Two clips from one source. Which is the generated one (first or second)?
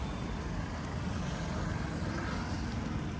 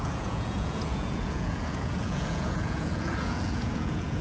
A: second